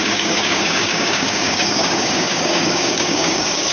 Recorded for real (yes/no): no